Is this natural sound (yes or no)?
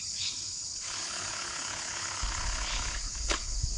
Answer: no